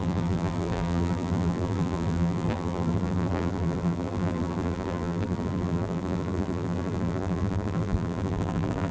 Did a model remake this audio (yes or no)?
yes